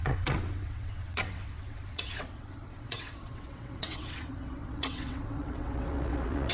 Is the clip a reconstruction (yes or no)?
yes